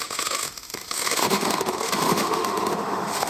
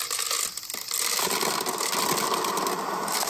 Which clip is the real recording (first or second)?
second